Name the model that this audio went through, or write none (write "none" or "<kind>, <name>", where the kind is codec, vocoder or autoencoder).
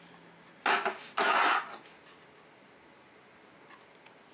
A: none